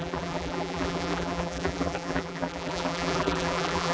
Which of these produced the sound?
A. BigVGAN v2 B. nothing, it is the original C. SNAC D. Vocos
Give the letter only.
A